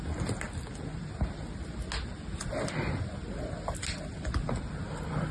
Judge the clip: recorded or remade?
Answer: recorded